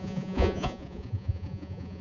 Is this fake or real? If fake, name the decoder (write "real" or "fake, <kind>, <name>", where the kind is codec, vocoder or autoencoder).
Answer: fake, vocoder, Vocos